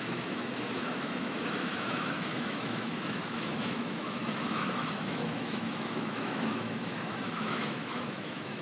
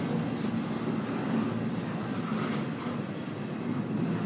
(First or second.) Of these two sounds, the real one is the second